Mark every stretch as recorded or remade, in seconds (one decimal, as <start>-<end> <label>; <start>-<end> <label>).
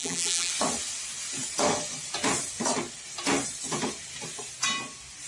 0.0-0.5 remade; 0.5-5.3 recorded